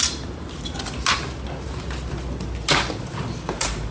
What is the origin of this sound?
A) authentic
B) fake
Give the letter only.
A